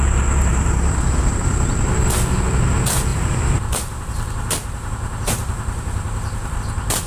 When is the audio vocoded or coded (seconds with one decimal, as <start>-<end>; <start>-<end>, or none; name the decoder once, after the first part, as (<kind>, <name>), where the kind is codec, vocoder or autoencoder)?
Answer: 0.5-1.3 (vocoder, BigVGAN v2); 3.1-6.6